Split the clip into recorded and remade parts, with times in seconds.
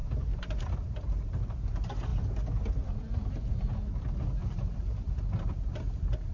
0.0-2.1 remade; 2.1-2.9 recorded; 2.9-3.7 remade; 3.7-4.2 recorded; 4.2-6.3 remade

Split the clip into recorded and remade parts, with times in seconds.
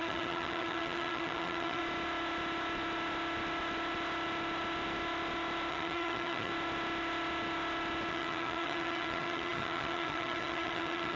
0.0-1.8 remade; 1.8-5.7 recorded; 5.7-6.5 remade; 6.5-8.1 recorded; 8.1-11.2 remade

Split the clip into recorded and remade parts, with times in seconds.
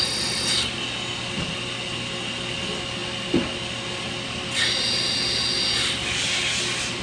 0.0-7.0 recorded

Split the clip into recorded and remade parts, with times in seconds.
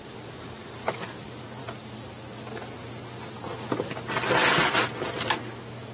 0.0-5.9 recorded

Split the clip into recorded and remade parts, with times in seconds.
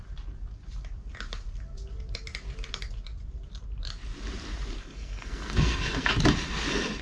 0.0-4.8 recorded; 4.8-6.1 remade; 6.1-7.0 recorded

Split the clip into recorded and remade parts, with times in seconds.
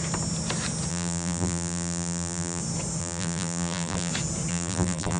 0.0-0.9 recorded; 0.9-2.6 remade; 2.6-3.0 recorded; 3.0-4.1 remade; 4.1-4.5 recorded; 4.5-5.2 remade